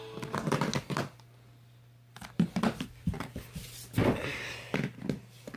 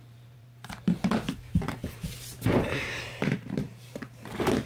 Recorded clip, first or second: first